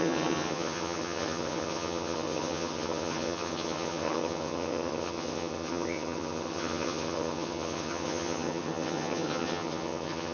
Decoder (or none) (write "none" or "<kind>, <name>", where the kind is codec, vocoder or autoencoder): vocoder, HiFi-GAN